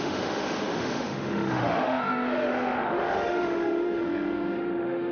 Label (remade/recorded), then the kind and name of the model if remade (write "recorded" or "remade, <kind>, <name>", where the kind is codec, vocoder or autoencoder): remade, autoencoder, DAC-VAE